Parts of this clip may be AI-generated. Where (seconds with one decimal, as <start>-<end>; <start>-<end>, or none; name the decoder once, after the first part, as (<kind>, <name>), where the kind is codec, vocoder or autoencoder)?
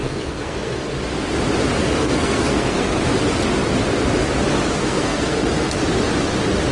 0.0-0.9 (codec, SNAC); 1.8-3.0; 4.8-5.8